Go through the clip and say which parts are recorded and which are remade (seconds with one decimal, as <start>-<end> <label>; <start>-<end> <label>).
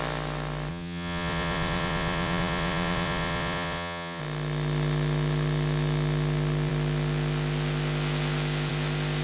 0.0-0.7 recorded; 0.7-4.2 remade; 4.2-9.2 recorded